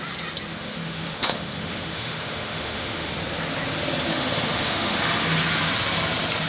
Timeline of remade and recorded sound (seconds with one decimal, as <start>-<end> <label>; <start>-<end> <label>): 0.0-0.5 recorded; 0.5-3.1 remade; 3.1-4.1 recorded; 4.1-5.0 remade; 5.0-6.5 recorded